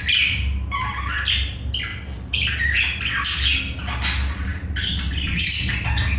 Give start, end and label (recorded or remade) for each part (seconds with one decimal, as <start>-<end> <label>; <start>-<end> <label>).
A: 0.0-1.9 recorded; 1.9-3.0 remade; 3.0-6.2 recorded